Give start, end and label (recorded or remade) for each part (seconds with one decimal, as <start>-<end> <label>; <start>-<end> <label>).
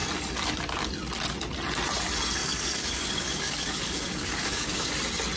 0.0-2.4 recorded; 2.4-4.9 remade; 4.9-5.4 recorded